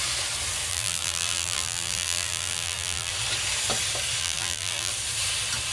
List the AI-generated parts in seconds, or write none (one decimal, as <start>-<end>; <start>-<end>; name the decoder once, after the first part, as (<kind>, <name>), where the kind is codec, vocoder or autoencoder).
0.7-3.1 (vocoder, BigVGAN v2); 4.2-4.9